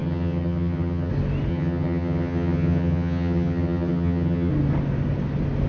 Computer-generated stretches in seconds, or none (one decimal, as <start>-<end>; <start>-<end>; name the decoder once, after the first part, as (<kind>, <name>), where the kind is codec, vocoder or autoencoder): 0.0-1.1 (vocoder, HiFi-GAN); 1.5-4.5